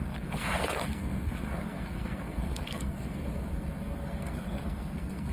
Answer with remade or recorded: remade